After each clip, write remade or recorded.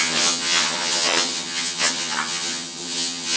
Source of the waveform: remade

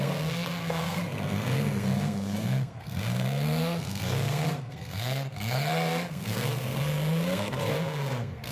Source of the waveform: remade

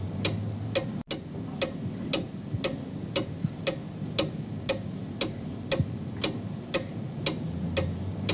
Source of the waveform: recorded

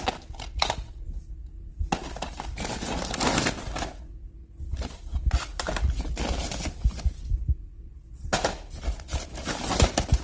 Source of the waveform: recorded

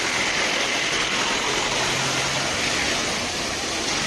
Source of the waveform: recorded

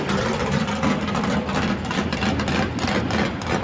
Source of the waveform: recorded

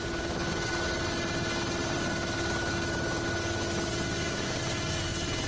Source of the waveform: recorded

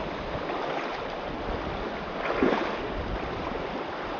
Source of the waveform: recorded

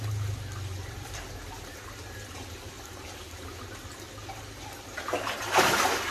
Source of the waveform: recorded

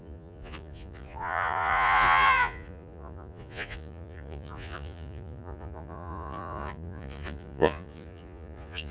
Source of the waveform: remade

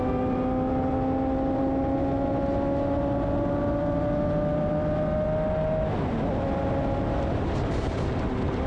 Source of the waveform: recorded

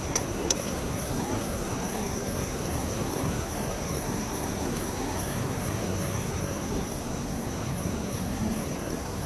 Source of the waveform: remade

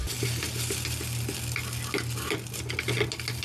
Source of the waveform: recorded